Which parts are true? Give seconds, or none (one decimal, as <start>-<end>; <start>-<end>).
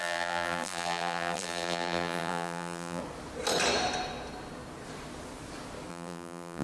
3.0-5.9